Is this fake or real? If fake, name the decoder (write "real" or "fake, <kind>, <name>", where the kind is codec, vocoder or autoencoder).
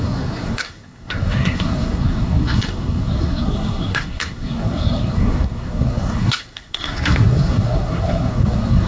fake, codec, SNAC